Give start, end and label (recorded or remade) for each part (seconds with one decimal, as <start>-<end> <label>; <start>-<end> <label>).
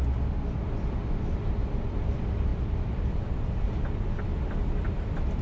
0.0-1.6 recorded; 1.6-2.1 remade; 2.1-2.5 recorded; 2.5-3.7 remade; 3.7-5.4 recorded